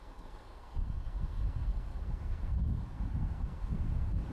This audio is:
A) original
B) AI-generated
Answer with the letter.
B